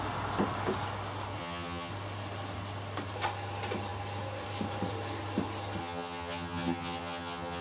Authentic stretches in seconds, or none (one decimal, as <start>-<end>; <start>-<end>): 0.0-1.4; 1.9-5.8